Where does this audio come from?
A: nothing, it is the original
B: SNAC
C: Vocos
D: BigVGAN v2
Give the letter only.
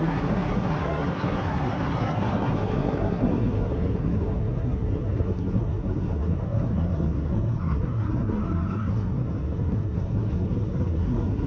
B